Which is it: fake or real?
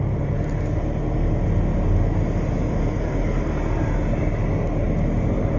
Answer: real